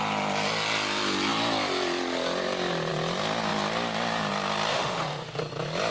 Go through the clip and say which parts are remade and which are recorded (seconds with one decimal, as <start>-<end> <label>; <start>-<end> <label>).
0.0-4.7 recorded; 4.7-5.4 remade; 5.4-5.9 recorded